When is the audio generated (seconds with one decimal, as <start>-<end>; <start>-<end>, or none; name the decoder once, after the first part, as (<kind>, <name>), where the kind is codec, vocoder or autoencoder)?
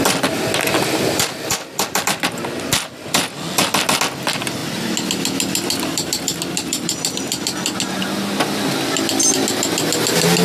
none